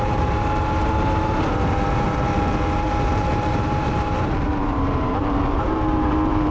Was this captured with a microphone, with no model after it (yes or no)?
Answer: no